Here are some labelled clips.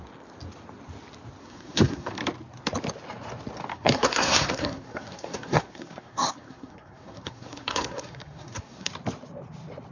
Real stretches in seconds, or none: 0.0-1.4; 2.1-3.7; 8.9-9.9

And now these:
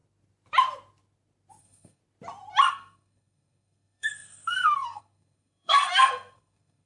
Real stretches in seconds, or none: 0.0-1.6; 2.0-2.7

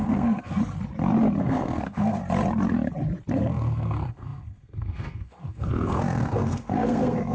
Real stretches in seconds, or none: 0.6-1.4; 2.2-3.3

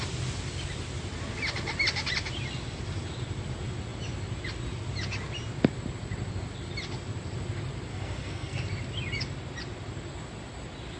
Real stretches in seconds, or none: 0.0-7.9; 8.6-11.0

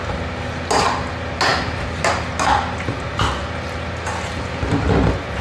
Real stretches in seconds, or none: 0.0-5.4